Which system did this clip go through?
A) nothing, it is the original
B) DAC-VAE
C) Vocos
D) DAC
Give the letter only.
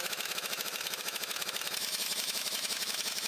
B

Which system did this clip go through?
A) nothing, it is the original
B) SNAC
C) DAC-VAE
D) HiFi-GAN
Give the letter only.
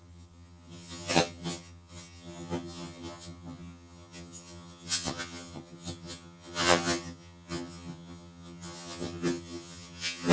D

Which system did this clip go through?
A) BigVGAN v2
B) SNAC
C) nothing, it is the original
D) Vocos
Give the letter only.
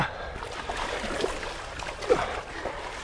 C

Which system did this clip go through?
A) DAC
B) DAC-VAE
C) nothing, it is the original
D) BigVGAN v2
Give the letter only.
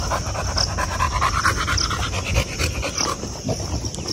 C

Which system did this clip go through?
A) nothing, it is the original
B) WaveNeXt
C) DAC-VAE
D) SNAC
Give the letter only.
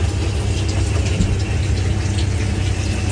A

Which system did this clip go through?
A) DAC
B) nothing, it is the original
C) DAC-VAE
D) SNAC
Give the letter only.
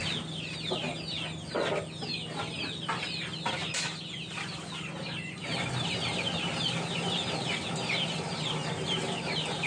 B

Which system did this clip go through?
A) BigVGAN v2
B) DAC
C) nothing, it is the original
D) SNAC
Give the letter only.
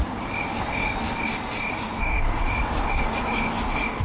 C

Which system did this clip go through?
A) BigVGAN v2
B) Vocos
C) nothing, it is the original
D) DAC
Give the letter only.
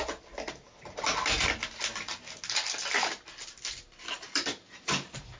C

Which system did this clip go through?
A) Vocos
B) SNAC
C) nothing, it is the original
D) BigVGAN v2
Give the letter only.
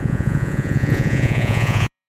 A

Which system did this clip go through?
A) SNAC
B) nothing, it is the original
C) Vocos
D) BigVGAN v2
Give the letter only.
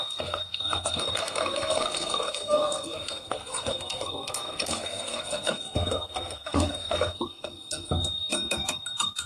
A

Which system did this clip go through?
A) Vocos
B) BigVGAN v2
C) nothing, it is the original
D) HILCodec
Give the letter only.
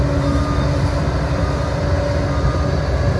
C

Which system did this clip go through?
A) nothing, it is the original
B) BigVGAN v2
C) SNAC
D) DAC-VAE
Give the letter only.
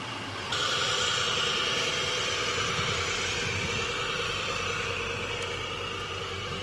B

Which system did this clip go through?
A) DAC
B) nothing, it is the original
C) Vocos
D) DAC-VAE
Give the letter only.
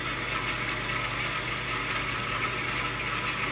B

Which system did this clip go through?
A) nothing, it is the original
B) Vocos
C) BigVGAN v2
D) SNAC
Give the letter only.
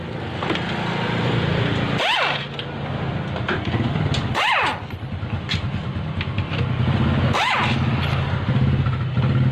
A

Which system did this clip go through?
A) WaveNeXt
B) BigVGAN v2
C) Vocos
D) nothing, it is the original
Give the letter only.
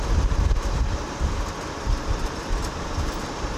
B